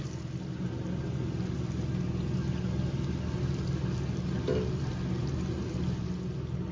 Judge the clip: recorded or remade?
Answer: recorded